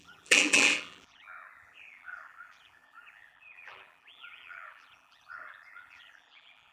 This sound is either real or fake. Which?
fake